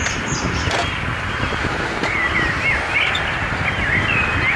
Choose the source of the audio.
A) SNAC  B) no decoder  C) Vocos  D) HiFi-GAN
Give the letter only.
B